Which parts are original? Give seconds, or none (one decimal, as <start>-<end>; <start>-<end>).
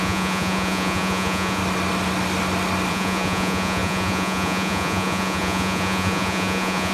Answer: 1.6-2.9